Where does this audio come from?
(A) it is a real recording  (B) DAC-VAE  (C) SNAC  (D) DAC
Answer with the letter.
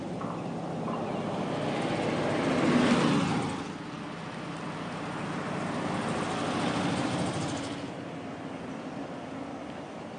A